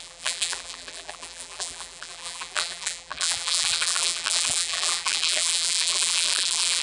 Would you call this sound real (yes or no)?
no